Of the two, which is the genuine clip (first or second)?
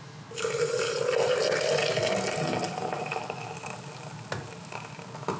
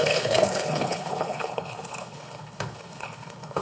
first